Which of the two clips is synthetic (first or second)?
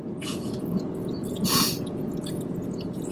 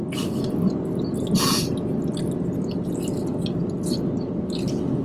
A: first